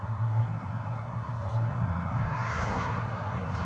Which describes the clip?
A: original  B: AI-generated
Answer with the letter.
B